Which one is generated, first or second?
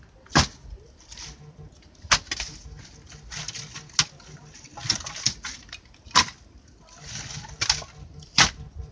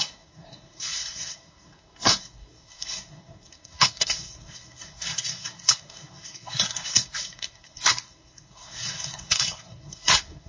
second